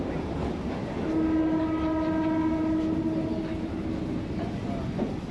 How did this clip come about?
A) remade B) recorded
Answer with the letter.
B